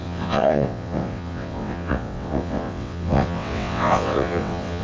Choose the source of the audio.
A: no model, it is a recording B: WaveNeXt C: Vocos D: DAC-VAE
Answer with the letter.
B